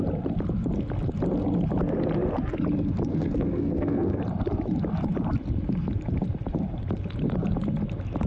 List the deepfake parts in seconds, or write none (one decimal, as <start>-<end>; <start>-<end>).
3.1-4.2